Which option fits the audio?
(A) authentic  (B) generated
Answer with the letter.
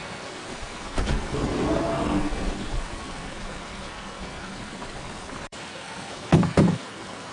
B